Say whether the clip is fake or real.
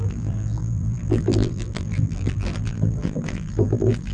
fake